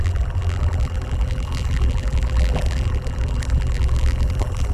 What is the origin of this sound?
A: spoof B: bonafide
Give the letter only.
A